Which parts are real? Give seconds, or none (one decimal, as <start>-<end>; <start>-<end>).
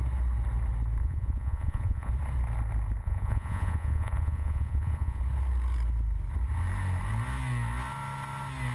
0.0-1.0; 2.1-3.0; 5.2-8.7